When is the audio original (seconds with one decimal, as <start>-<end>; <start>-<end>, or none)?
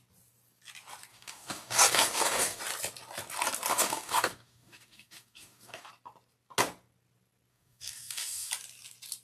0.0-1.1; 2.6-3.7; 5.9-7.5; 8.5-9.2